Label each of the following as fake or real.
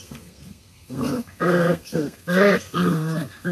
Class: fake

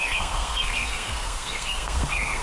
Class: fake